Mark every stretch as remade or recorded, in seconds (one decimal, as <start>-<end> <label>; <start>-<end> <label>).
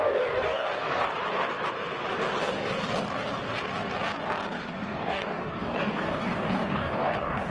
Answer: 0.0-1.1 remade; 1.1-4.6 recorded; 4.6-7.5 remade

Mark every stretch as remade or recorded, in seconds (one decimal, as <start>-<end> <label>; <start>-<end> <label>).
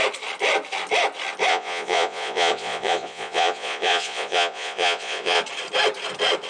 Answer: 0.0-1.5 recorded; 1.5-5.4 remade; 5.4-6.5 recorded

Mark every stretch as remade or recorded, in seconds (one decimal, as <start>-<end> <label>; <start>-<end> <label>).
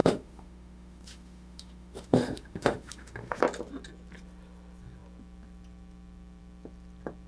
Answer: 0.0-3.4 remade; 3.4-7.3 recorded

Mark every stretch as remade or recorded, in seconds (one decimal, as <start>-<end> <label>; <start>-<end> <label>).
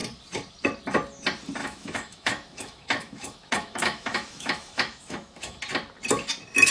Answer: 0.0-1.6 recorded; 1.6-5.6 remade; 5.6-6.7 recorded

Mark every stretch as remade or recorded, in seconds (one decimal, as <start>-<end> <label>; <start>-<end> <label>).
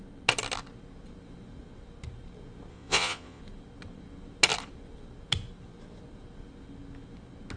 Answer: 0.0-2.7 recorded; 2.7-3.4 remade; 3.4-7.6 recorded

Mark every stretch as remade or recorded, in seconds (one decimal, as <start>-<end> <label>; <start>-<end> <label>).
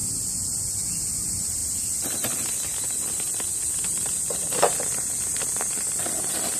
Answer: 0.0-6.6 recorded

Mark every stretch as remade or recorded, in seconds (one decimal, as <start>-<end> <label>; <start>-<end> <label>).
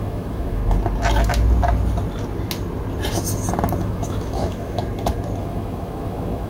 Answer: 0.0-0.6 remade; 0.6-3.8 recorded; 3.8-4.8 remade; 4.8-5.4 recorded; 5.4-6.5 remade